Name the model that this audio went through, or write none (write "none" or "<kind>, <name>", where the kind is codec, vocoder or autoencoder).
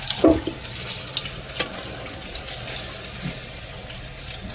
none